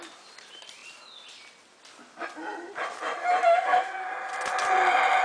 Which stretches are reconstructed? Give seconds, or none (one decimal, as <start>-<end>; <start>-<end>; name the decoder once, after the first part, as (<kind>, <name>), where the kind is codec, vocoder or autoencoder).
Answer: none